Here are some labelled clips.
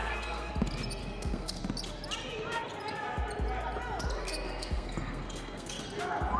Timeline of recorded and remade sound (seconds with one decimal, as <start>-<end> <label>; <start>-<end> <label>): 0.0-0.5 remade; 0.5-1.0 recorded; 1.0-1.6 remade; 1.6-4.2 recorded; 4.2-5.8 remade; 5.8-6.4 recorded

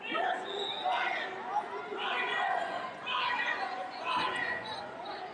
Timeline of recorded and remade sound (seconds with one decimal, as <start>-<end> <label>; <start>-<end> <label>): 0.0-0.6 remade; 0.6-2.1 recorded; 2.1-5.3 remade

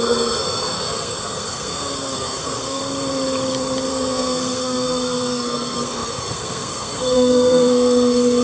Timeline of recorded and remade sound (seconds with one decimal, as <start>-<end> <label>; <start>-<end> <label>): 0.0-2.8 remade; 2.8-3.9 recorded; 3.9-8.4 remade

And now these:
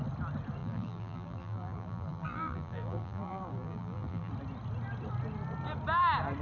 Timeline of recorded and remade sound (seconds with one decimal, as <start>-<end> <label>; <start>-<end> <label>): 0.0-0.6 recorded; 0.6-4.3 remade; 4.3-6.4 recorded

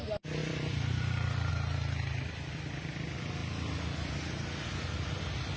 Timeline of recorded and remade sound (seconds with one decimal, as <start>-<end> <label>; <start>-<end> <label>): 0.0-0.4 recorded; 0.4-1.5 remade; 1.5-5.6 recorded

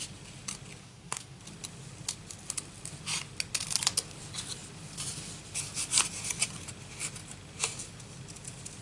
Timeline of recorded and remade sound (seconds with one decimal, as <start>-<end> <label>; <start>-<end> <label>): 0.0-0.8 recorded; 0.8-1.4 remade; 1.4-8.8 recorded